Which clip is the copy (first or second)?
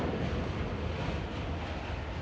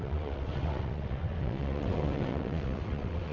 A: second